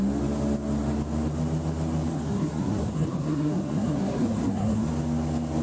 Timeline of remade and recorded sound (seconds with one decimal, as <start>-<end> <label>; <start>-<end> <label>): 0.0-2.1 recorded; 2.1-4.9 remade; 4.9-5.6 recorded